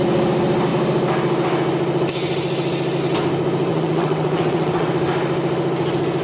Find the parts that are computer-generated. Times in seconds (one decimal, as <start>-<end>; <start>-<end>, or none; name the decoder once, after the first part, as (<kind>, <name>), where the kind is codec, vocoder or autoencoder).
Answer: 3.7-4.9 (vocoder, WaveNeXt)